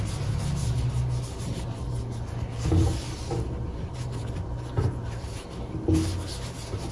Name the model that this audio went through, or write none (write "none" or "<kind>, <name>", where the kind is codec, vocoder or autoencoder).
none